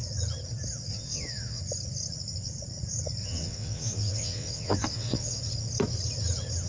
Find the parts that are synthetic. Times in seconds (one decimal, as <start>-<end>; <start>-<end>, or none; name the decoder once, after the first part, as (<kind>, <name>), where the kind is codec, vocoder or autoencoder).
0.9-1.6 (vocoder, WaveNeXt); 3.2-5.4